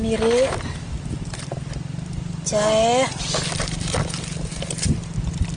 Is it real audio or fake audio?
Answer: real